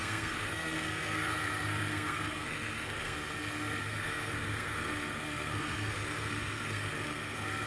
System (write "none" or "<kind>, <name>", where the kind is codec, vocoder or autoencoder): codec, SNAC